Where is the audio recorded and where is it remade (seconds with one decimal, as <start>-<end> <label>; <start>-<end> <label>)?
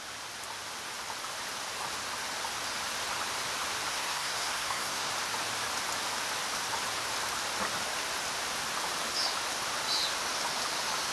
0.0-3.9 recorded; 3.9-5.1 remade; 5.1-11.1 recorded